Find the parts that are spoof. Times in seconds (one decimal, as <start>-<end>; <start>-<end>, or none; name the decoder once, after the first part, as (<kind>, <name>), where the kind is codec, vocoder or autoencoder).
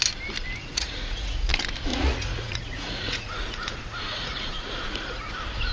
0.6-1.5 (vocoder, Vocos); 1.9-5.3